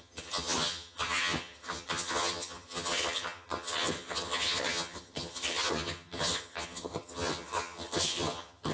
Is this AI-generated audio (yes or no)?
yes